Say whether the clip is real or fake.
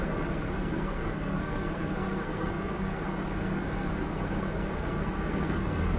fake